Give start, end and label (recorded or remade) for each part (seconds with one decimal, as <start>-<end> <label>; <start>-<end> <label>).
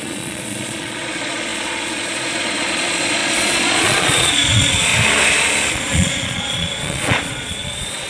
0.0-4.9 remade; 4.9-5.7 recorded; 5.7-8.1 remade